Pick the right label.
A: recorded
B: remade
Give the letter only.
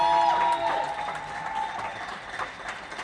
A